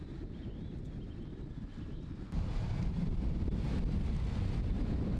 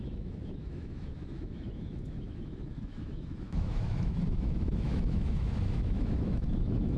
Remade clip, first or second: second